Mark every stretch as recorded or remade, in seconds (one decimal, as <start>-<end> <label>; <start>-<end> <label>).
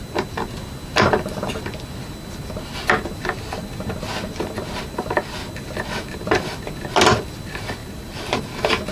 0.0-7.8 recorded; 7.8-8.4 remade; 8.4-8.9 recorded